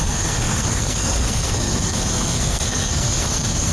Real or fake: fake